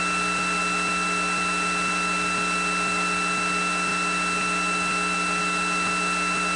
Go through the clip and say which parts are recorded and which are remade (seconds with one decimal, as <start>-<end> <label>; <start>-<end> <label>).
0.0-6.6 recorded